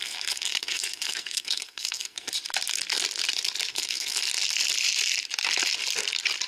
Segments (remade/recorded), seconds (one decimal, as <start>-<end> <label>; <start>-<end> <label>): 0.0-2.3 remade; 2.3-3.7 recorded; 3.7-4.2 remade; 4.2-6.5 recorded